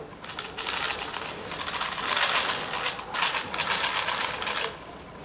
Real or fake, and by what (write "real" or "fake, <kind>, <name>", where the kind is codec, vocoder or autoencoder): real